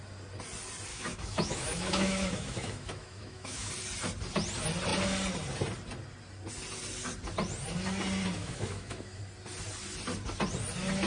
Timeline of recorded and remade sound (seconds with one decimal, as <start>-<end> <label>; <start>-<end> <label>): 0.0-0.9 recorded; 0.9-3.7 remade; 3.7-8.4 recorded; 8.4-9.2 remade; 9.2-11.1 recorded